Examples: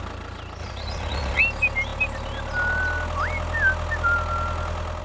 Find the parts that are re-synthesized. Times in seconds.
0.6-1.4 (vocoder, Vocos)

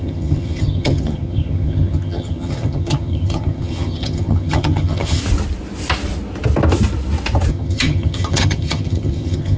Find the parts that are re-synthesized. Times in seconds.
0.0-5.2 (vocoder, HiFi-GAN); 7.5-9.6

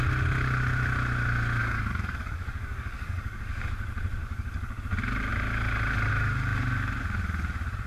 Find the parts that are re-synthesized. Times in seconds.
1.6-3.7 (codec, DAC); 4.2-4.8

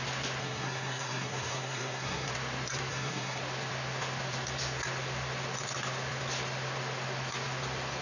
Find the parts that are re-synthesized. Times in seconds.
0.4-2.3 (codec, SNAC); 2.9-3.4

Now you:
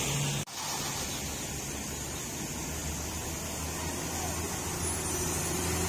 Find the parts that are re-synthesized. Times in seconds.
none

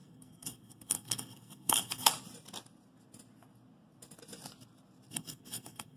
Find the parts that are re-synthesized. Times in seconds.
0.0-2.1 (codec, SNAC); 5.1-6.0

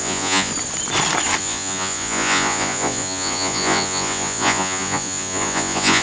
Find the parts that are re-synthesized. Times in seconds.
0.0-0.5 (vocoder, Vocos); 1.4-6.0